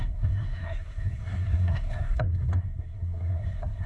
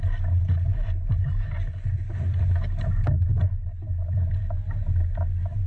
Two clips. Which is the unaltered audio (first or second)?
second